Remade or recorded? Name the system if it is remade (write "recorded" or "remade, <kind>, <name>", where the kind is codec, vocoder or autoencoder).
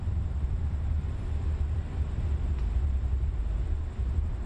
recorded